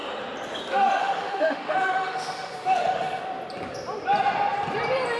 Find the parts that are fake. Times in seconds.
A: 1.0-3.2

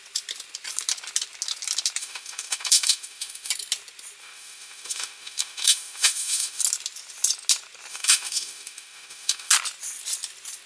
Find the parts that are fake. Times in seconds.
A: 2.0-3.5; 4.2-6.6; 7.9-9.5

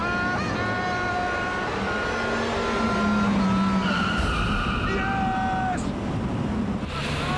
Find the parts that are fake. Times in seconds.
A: none

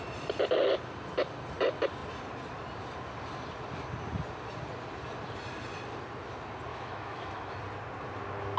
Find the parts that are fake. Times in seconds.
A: 6.7-7.6

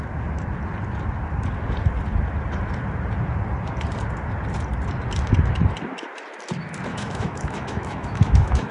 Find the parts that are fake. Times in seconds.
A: 6.9-8.7